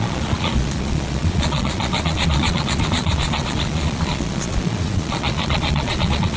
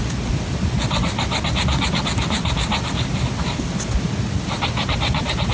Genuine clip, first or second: second